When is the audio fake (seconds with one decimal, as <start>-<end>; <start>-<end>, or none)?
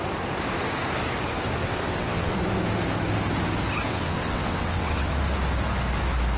1.6-2.3; 3.9-5.1